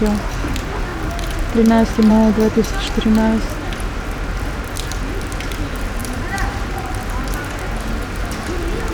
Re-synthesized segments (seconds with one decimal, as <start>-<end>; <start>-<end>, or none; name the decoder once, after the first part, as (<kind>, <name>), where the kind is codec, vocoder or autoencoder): 0.9-1.5 (vocoder, BigVGAN v2); 6.0-6.9